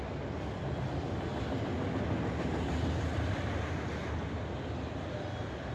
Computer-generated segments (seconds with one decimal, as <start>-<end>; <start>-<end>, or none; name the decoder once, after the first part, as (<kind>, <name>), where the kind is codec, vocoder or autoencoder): none